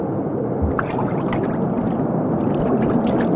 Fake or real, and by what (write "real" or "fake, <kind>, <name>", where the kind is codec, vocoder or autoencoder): real